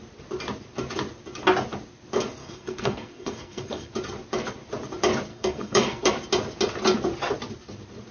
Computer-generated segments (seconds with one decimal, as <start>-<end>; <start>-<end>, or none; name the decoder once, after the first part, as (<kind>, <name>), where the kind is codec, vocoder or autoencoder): 2.4-3.9 (codec, SNAC); 5.3-6.1